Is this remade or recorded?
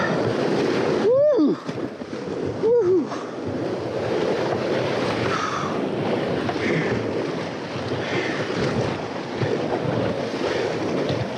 recorded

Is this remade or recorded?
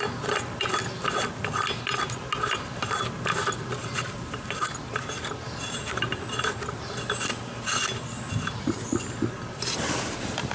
recorded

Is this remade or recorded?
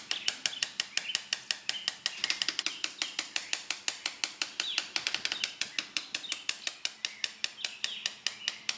recorded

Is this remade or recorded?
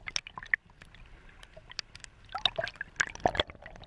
recorded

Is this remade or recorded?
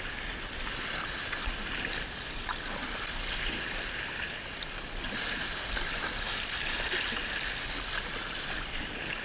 recorded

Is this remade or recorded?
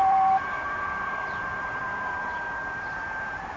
remade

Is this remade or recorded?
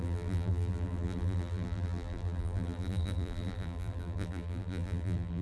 remade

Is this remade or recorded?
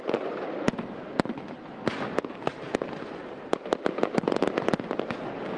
recorded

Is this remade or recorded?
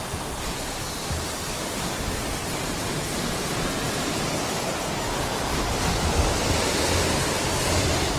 recorded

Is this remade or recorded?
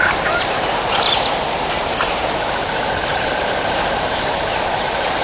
remade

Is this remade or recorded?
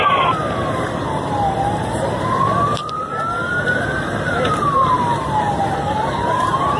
remade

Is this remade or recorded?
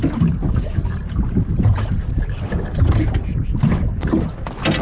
recorded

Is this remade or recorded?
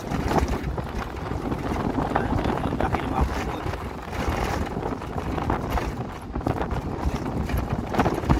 recorded